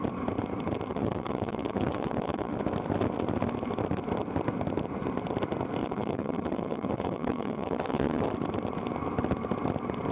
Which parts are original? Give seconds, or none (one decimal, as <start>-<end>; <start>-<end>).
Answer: 0.0-0.9; 2.5-5.8; 8.2-10.1